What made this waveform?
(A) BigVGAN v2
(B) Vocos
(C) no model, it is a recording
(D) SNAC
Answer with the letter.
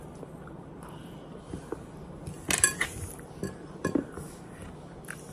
C